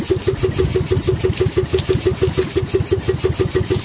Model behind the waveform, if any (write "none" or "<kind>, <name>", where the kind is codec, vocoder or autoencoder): none